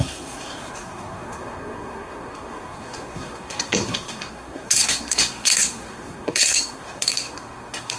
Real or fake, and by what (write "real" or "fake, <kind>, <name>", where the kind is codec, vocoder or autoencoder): fake, codec, SNAC